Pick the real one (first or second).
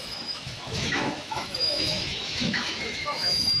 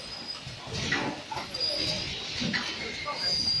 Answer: second